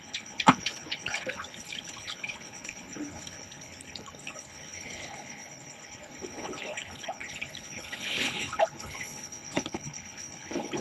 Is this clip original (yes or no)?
no